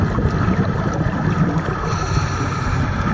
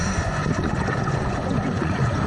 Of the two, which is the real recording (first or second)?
first